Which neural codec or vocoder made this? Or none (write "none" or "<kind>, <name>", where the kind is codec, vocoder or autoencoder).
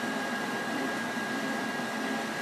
none